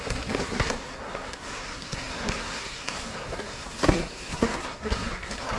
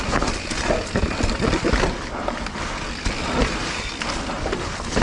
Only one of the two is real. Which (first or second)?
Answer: second